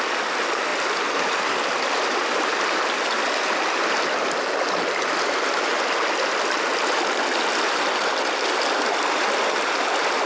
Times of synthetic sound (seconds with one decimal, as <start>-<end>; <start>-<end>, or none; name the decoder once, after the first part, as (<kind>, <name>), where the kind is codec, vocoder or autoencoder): none